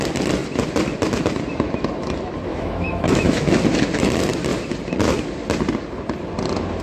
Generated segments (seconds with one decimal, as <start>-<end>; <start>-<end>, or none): 2.5-3.6